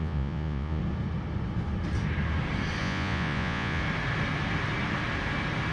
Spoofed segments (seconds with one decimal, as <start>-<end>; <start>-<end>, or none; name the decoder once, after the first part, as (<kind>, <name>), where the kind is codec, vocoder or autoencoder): 0.0-0.8 (vocoder, Vocos); 2.8-3.8